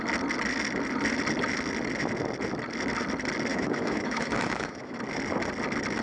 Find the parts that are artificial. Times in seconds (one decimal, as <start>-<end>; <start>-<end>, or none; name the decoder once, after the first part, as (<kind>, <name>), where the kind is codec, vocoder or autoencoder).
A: 3.5-5.0 (autoencoder, DAC-VAE)